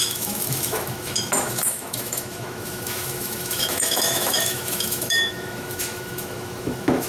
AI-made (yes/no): yes